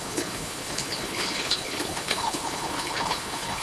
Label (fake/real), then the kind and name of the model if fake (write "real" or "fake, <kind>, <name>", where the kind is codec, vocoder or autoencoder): fake, codec, HILCodec